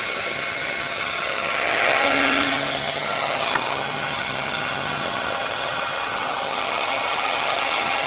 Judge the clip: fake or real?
fake